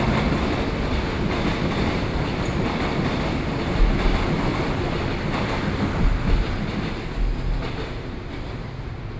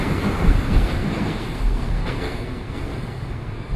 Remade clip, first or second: second